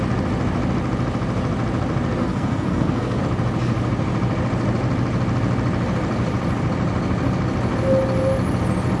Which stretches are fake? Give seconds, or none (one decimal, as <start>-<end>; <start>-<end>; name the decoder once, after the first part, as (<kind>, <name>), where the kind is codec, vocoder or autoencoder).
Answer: 2.2-3.2 (codec, SNAC)